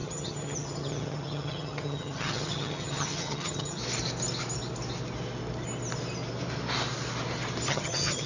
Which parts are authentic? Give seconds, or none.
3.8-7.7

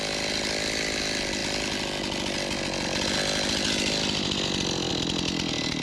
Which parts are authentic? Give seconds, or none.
0.0-5.8

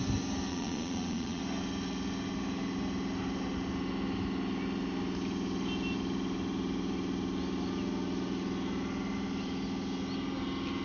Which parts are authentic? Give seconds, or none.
0.0-0.5; 1.4-10.8